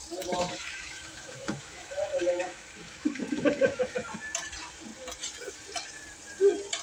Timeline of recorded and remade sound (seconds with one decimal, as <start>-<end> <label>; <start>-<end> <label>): 0.0-4.1 remade; 4.1-6.8 recorded